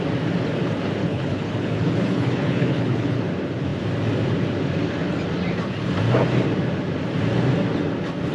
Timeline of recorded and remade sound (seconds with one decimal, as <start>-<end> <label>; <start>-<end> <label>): 0.0-1.0 recorded; 1.0-3.2 remade; 3.2-8.3 recorded